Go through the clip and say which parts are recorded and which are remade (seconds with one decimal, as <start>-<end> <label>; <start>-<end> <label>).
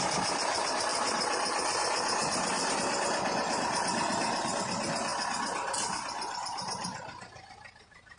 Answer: 0.0-8.2 recorded